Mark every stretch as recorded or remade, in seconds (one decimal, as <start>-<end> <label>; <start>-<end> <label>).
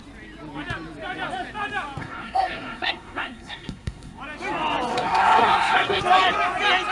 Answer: 0.0-2.0 recorded; 2.0-4.2 remade; 4.2-4.9 recorded; 4.9-6.0 remade; 6.0-6.9 recorded